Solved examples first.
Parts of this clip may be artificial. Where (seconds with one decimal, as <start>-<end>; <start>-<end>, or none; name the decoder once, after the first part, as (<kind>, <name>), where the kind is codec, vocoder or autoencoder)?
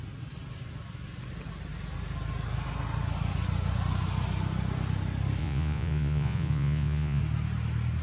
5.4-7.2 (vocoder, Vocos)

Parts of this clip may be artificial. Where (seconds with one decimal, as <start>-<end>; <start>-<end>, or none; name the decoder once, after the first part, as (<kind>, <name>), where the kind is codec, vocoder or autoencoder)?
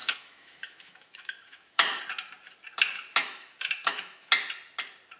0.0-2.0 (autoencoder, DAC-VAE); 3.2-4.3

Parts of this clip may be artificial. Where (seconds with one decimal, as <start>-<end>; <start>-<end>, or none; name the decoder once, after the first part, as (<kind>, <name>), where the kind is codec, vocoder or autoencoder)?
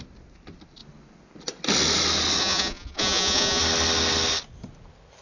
2.4-3.6 (vocoder, Vocos)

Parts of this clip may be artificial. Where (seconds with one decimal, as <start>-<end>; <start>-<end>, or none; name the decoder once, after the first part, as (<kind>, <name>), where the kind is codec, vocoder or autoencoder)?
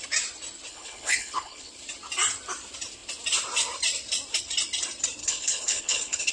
0.7-1.7 (codec, HILCodec); 5.2-6.3